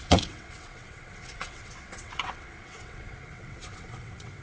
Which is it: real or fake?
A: fake